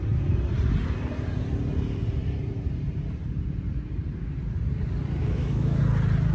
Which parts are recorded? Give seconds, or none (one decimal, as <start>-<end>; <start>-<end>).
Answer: 0.0-5.2; 5.8-6.3